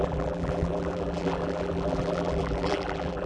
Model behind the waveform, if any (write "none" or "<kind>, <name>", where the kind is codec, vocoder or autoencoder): vocoder, BigVGAN v2